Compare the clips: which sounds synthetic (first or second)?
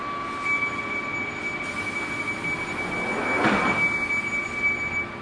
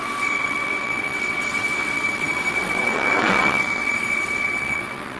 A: second